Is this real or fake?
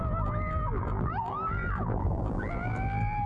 fake